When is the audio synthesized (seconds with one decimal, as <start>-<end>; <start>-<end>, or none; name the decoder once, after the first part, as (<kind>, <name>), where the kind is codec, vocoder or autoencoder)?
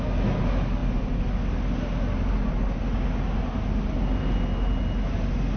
none